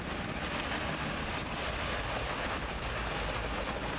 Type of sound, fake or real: real